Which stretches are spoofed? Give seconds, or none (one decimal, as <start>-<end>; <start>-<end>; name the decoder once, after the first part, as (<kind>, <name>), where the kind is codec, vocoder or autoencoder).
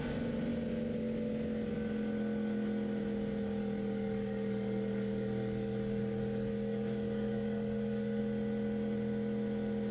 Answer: 3.6-8.2 (codec, DAC)